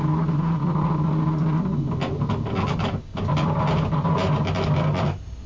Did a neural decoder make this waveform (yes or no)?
no